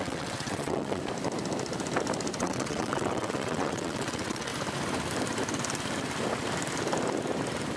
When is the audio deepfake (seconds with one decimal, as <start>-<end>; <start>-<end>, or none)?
0.0-1.0; 2.4-4.5